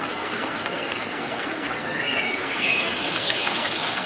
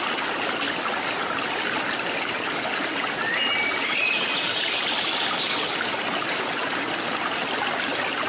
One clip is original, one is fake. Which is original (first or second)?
second